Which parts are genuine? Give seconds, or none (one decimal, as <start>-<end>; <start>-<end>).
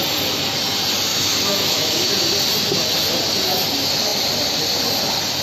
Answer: 0.0-1.1; 2.1-5.4